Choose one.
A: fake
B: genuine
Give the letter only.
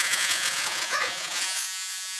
A